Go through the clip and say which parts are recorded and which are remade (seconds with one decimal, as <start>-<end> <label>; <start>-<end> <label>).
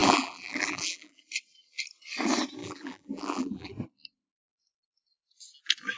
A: 0.0-1.2 remade; 1.2-2.6 recorded; 2.6-3.7 remade; 3.7-6.0 recorded